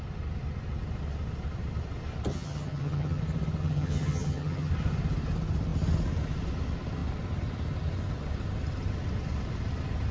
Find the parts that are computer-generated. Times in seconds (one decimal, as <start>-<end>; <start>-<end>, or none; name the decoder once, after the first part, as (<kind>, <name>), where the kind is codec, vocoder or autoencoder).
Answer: 2.3-3.2 (vocoder, HiFi-GAN); 3.6-4.7